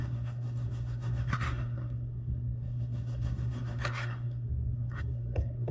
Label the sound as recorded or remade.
remade